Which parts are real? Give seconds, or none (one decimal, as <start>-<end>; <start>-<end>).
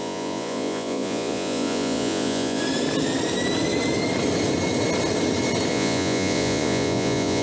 2.6-5.7